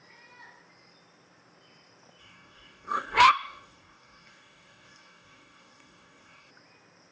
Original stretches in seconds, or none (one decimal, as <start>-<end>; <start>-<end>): 0.0-2.2; 6.5-7.1